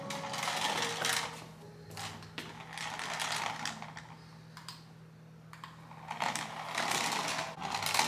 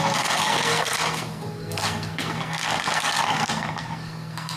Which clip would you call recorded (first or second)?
first